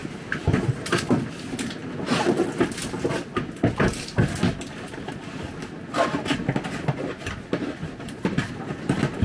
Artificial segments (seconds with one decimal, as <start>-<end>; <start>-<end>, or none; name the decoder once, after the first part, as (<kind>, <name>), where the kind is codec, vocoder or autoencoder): none